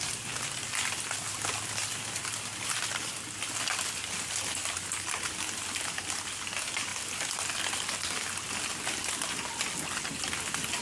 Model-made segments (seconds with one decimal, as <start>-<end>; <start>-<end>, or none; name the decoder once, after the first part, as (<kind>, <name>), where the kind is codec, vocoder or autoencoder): none